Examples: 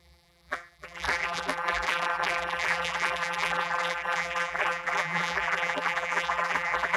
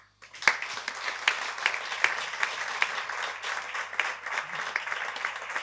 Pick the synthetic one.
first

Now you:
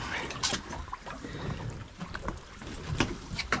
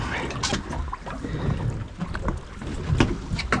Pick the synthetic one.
first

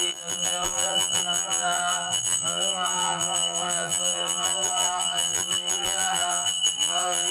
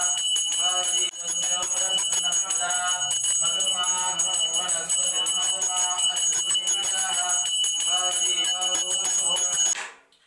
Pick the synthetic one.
first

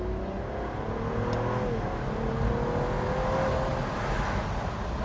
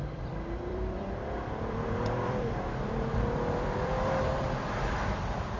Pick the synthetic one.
second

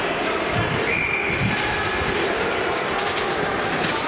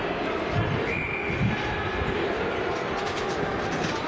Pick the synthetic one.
first